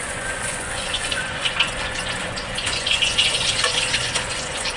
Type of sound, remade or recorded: remade